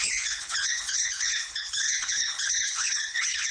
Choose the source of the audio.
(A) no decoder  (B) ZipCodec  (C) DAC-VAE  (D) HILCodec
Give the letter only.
D